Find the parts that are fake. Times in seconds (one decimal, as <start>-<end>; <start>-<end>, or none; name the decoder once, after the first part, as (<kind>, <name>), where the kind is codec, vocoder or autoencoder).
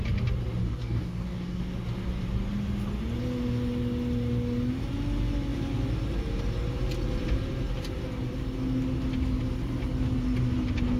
0.6-1.6 (codec, DAC)